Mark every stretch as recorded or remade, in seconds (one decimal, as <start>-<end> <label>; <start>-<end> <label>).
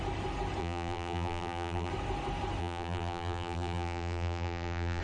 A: 0.0-0.6 recorded; 0.6-1.9 remade; 1.9-2.6 recorded; 2.6-5.0 remade